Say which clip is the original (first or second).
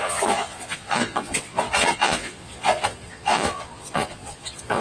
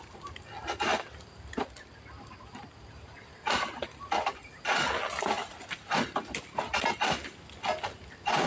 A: second